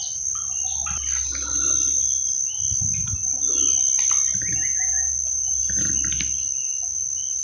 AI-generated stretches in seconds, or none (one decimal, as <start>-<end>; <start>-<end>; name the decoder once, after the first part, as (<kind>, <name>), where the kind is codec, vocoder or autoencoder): none